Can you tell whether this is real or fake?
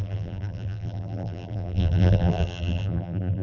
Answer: fake